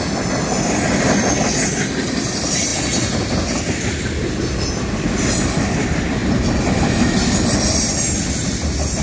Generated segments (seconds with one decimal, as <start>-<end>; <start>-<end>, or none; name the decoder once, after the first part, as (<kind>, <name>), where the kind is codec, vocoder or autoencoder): none